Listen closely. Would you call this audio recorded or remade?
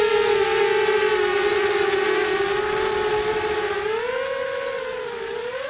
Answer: recorded